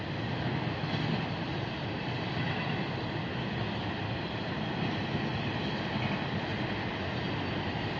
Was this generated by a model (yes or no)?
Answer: no